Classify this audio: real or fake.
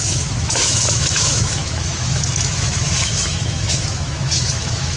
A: fake